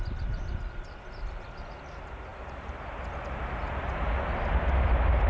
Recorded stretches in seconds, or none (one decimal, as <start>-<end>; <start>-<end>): 0.0-2.3; 2.9-5.3